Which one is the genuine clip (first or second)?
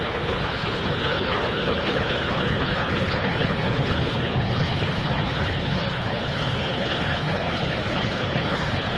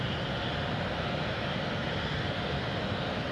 second